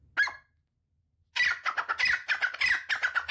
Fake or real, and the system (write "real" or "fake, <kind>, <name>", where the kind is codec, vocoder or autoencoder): real